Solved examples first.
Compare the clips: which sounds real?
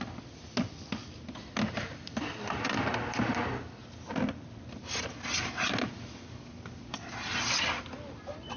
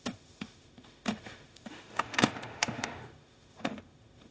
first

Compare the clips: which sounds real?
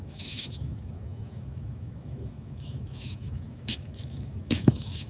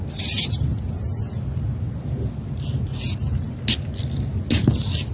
second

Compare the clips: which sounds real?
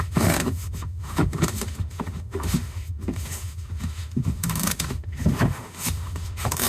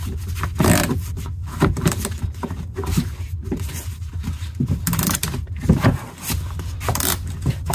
second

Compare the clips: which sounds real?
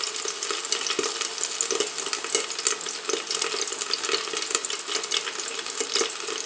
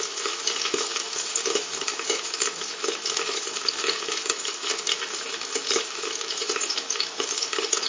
first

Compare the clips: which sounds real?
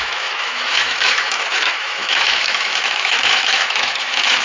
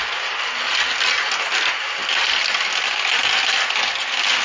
second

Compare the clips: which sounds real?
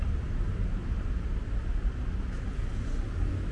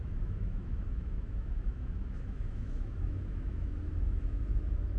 first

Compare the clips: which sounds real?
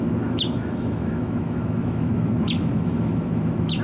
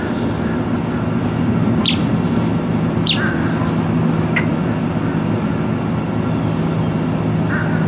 second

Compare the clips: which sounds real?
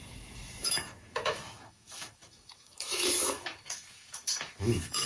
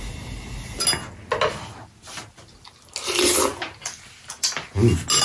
second